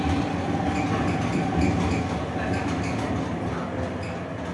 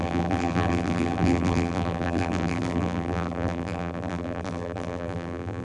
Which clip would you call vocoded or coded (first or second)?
second